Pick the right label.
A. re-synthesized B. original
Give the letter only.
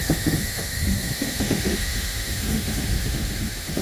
A